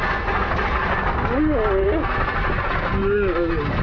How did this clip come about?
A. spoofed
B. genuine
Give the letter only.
B